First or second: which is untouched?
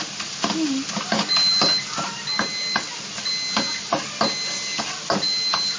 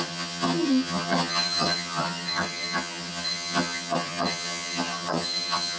first